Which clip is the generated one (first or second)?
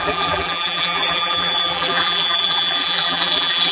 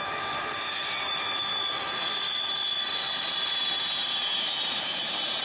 first